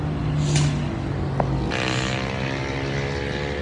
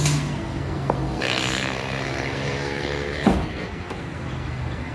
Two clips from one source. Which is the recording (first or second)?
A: first